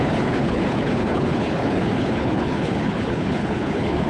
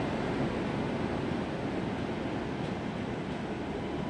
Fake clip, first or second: first